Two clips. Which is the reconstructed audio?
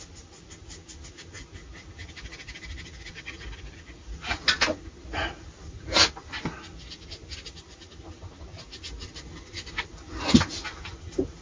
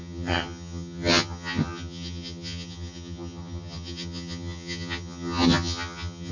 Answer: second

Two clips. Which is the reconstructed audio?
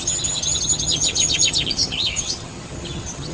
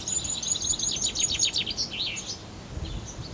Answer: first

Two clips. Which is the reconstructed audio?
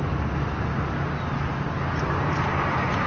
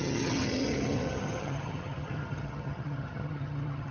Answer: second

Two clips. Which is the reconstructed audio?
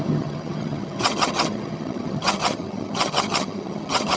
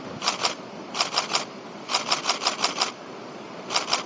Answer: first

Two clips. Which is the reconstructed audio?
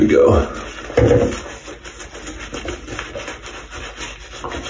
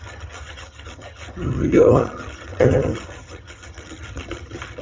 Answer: second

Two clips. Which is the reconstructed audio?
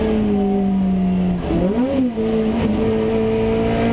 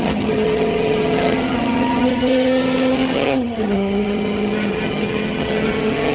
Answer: second